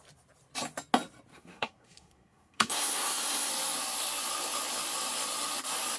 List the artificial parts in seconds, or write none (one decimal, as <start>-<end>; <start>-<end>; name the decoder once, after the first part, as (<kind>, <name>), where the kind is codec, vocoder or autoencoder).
1.3-3.5 (codec, SNAC)